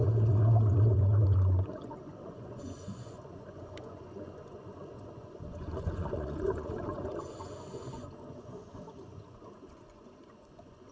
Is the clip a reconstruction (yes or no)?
yes